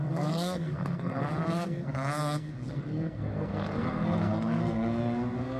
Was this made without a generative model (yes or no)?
no